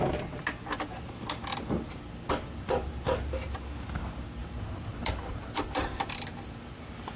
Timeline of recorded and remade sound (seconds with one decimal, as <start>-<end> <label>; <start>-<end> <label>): 0.0-4.4 recorded; 4.4-7.2 remade